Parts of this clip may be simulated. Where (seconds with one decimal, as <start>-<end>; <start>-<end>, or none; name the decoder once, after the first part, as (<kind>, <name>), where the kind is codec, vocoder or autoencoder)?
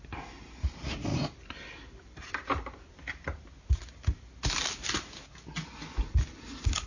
none